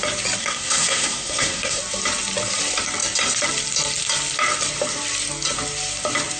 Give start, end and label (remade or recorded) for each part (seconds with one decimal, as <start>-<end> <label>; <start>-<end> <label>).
0.0-0.4 recorded; 0.4-1.8 remade; 1.8-6.4 recorded